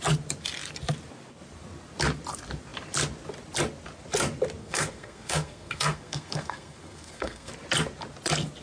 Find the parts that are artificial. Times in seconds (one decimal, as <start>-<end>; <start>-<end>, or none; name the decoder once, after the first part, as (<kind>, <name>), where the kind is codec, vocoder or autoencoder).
4.6-7.5 (codec, SNAC)